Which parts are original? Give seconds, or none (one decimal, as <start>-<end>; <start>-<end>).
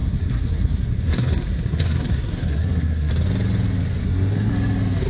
3.1-4.0; 4.5-5.1